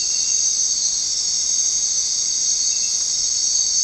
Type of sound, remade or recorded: recorded